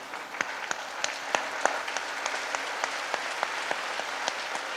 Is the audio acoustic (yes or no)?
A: no